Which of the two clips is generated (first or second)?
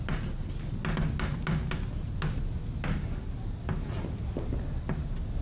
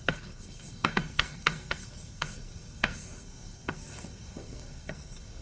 second